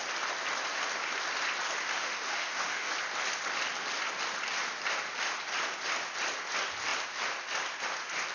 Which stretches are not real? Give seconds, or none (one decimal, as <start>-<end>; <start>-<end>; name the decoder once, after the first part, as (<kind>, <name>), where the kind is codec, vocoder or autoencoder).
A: 1.9-2.9 (autoencoder, DAC-VAE)